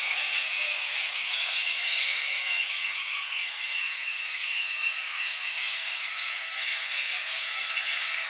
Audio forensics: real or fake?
fake